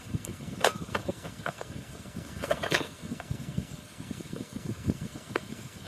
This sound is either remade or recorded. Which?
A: remade